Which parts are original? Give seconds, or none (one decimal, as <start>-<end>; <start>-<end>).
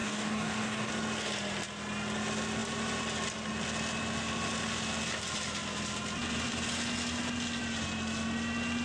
0.9-8.8